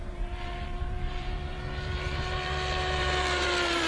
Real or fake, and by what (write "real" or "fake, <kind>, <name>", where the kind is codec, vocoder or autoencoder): fake, vocoder, BigVGAN v2